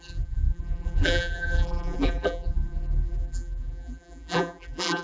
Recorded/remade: remade